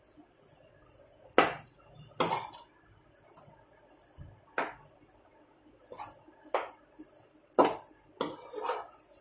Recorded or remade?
recorded